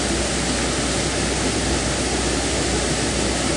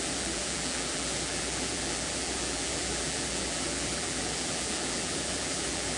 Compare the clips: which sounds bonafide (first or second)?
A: first